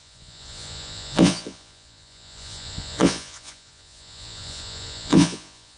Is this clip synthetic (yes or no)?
yes